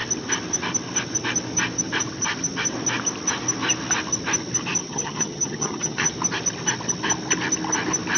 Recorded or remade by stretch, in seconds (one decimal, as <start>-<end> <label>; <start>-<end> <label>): 0.0-4.8 recorded; 4.8-6.1 remade; 6.1-8.2 recorded